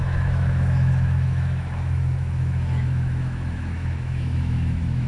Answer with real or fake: fake